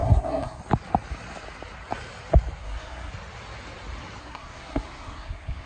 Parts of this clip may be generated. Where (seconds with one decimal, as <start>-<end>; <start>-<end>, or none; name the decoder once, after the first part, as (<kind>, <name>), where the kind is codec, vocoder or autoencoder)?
0.0-0.6 (codec, SNAC); 2.6-3.1; 4.2-5.7

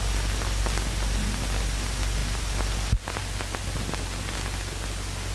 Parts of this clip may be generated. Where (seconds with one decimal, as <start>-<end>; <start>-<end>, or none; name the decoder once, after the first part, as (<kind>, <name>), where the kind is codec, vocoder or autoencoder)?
none

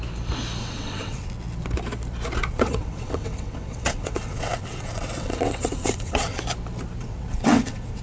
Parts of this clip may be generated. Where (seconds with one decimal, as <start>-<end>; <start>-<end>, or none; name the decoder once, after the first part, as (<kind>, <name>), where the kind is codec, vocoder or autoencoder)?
0.6-1.3 (vocoder, WaveNeXt); 2.5-6.4; 7.0-8.0

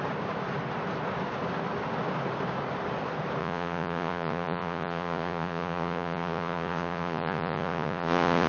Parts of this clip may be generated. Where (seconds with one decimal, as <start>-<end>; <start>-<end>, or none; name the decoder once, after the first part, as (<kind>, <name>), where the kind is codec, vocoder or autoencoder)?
3.4-8.5 (vocoder, Vocos)

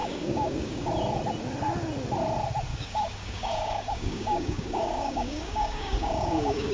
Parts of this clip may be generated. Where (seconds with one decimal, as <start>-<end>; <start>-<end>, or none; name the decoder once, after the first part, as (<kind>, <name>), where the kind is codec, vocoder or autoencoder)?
0.0-0.9 (codec, DAC); 2.7-6.7